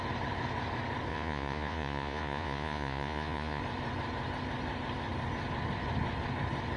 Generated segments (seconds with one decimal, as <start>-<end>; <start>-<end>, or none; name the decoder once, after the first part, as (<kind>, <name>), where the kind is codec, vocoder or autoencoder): 1.1-3.6 (vocoder, Vocos)